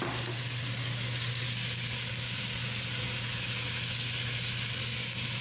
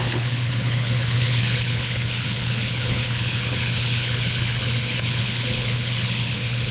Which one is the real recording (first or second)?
first